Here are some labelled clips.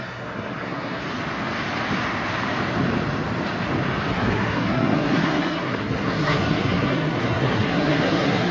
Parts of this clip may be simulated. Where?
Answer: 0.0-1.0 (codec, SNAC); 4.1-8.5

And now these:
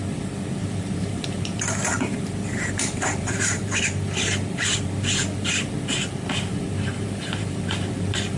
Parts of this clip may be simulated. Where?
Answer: 0.6-3.8 (vocoder, BigVGAN v2); 6.5-7.6

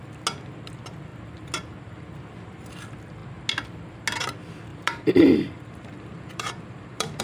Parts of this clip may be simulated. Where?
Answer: 4.7-7.2 (vocoder, BigVGAN v2)

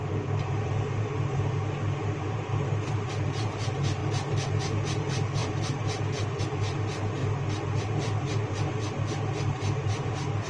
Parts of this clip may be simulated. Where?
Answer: 0.0-7.2 (vocoder, BigVGAN v2); 7.8-10.5

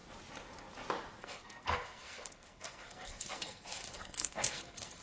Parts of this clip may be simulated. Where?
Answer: 1.2-5.0 (codec, SNAC)

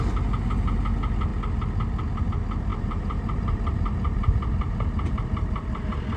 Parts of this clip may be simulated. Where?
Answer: 2.7-5.8 (vocoder, BigVGAN v2)